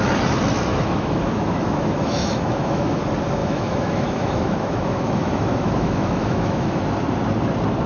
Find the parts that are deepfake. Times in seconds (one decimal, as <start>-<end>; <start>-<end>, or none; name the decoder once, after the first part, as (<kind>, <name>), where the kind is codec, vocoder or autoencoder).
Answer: 0.7-3.0 (autoencoder, DAC-VAE); 3.4-6.7